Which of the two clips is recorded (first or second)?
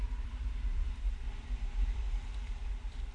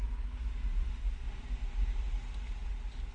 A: second